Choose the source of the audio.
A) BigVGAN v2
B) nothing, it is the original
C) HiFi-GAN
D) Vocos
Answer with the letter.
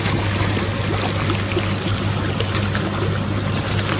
B